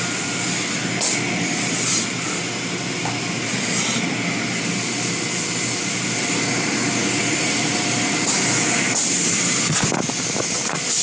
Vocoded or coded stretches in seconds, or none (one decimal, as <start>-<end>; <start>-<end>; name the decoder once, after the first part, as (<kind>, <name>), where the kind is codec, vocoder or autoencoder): none